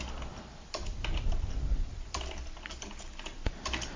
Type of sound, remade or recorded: recorded